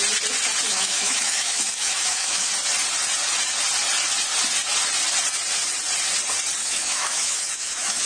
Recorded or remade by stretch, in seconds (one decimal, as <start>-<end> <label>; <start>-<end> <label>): 0.0-0.7 recorded; 0.7-2.5 remade; 2.5-6.6 recorded; 6.6-8.1 remade